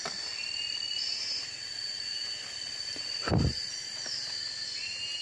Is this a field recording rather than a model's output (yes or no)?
yes